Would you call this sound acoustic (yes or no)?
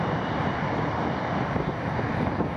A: yes